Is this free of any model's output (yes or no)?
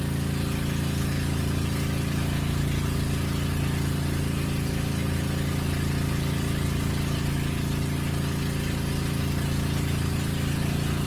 yes